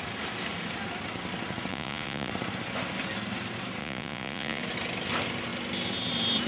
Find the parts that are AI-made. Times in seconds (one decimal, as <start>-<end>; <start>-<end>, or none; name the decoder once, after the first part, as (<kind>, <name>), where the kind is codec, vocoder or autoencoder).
1.7-2.3 (vocoder, Vocos); 3.8-4.6